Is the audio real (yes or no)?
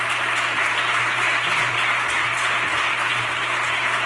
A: yes